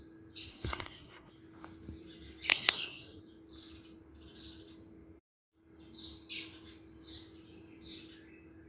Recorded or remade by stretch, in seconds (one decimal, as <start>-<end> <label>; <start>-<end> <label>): 0.0-0.5 recorded; 0.5-1.3 remade; 1.3-2.5 recorded; 2.5-3.2 remade; 3.2-8.7 recorded